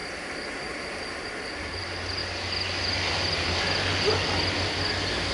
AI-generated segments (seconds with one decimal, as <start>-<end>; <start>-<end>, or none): 0.0-2.2